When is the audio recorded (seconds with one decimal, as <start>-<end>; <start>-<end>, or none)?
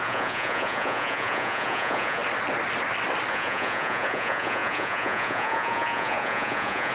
2.2-3.3